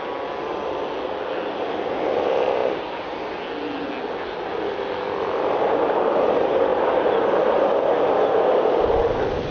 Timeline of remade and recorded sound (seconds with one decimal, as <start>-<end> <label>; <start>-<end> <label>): 0.0-9.5 recorded